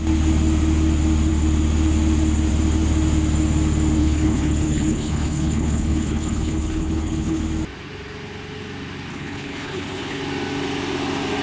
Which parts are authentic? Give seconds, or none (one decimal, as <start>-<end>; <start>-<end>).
0.0-4.0; 7.4-9.1; 10.2-11.4